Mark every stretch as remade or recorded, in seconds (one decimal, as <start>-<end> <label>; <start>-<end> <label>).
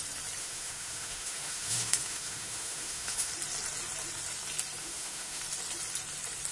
0.0-0.4 recorded; 0.4-3.3 remade; 3.3-4.8 recorded; 4.8-5.4 remade; 5.4-6.5 recorded